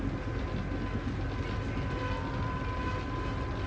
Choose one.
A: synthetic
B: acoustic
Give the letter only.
B